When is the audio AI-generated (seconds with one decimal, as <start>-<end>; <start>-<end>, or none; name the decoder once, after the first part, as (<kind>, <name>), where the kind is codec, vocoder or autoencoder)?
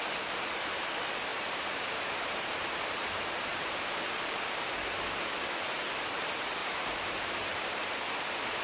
1.3-4.7 (vocoder, BigVGAN v2); 6.6-8.6